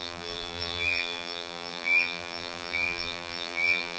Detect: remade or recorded remade